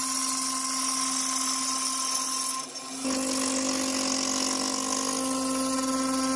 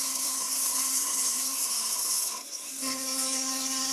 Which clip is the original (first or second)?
first